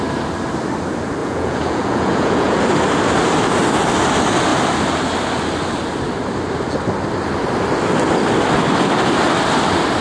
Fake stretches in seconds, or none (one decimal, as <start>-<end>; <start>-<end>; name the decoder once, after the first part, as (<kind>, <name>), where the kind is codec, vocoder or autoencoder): 1.2-2.6 (vocoder, Vocos)